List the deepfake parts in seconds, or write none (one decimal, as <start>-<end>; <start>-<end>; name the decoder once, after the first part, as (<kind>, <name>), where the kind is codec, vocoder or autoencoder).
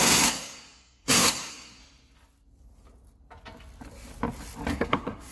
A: 0.0-1.8 (codec, SNAC); 4.7-5.3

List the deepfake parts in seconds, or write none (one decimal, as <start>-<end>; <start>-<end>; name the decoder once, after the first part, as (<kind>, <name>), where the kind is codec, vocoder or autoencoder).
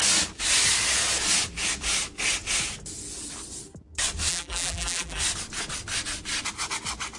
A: 4.3-5.2 (vocoder, BigVGAN v2)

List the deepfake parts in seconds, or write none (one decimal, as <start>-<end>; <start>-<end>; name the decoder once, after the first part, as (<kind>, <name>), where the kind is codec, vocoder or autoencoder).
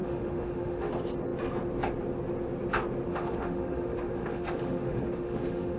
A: 0.0-0.9 (autoencoder, DAC-VAE); 3.1-5.8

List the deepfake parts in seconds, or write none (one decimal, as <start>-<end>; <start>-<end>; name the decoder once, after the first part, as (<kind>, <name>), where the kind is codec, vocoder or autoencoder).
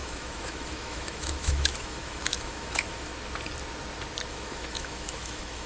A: 0.0-3.1 (autoencoder, DAC-VAE); 4.3-5.7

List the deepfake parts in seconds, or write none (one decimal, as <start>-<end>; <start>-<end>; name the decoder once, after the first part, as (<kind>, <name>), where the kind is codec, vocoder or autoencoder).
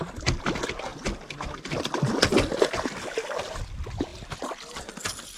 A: 0.9-2.1 (vocoder, BigVGAN v2)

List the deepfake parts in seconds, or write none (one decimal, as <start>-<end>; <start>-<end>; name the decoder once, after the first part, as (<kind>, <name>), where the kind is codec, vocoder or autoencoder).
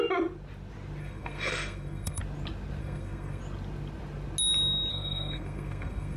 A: 1.0-2.2 (codec, SNAC); 2.8-3.4; 4.9-6.2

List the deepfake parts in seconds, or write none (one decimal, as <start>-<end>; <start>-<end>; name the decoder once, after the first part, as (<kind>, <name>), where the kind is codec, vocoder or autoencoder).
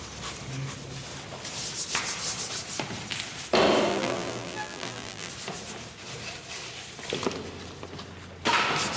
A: 3.9-5.3 (vocoder, BigVGAN v2)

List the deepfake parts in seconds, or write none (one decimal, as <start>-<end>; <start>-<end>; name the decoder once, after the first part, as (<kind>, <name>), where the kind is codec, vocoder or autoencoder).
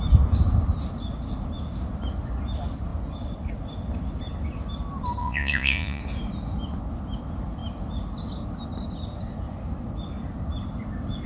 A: 5.2-6.0 (vocoder, Vocos)